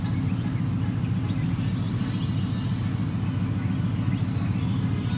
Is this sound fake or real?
real